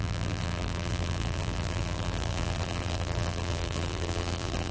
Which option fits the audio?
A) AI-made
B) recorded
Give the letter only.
A